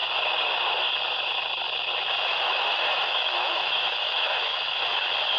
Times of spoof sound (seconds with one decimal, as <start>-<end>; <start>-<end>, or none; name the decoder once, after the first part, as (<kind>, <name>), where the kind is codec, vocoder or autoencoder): 2.3-4.9 (autoencoder, DAC-VAE)